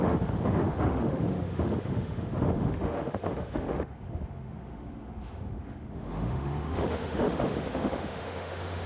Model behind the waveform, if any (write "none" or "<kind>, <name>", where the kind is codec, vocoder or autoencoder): autoencoder, DAC-VAE